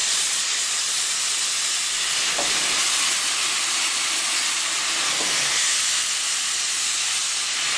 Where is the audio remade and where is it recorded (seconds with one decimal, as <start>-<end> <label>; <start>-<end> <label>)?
0.0-1.0 remade; 1.0-7.8 recorded